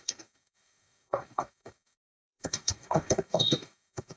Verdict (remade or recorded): remade